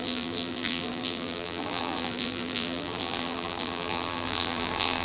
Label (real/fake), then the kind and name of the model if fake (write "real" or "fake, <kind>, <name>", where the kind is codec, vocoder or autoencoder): fake, vocoder, BigVGAN v2